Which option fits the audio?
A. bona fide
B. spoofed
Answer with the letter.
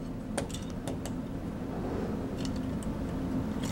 A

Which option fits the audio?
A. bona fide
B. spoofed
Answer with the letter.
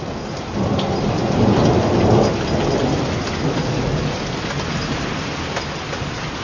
A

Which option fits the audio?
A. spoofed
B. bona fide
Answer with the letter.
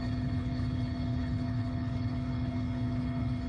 A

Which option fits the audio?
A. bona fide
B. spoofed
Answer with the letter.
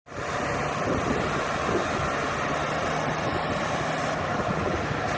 A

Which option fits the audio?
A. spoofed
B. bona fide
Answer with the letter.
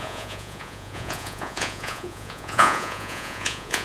A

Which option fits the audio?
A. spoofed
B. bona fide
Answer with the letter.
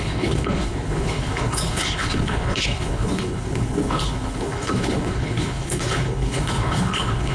A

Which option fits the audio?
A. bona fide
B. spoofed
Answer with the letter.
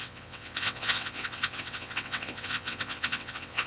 B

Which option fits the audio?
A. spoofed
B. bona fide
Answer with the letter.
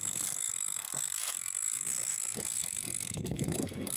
A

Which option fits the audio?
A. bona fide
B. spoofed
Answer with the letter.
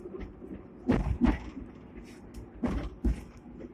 A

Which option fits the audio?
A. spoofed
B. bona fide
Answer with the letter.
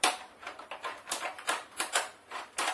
A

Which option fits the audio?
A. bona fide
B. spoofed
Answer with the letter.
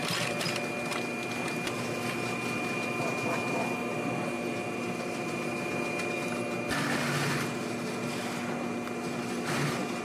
A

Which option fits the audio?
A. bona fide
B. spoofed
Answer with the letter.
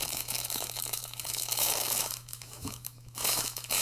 B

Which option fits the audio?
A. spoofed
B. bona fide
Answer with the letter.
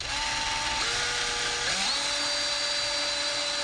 B